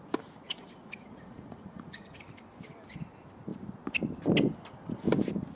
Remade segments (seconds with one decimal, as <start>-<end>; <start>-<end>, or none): 0.4-2.2